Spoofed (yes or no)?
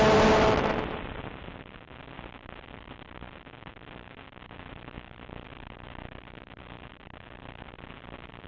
no